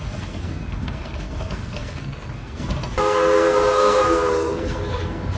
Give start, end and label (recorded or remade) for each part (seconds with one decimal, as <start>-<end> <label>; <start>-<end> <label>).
0.0-5.4 remade

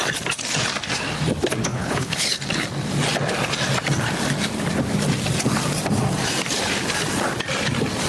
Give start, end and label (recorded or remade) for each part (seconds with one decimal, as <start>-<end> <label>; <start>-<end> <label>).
0.0-1.6 recorded; 1.6-2.4 remade; 2.4-8.1 recorded

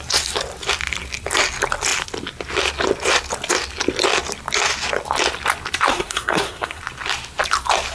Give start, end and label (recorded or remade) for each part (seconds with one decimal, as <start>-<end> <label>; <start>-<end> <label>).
0.0-5.9 recorded; 5.9-6.8 remade; 6.8-7.9 recorded

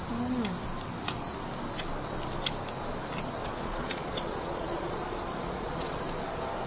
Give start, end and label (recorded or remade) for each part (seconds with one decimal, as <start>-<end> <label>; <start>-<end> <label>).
0.0-3.4 recorded; 3.4-6.0 remade; 6.0-6.7 recorded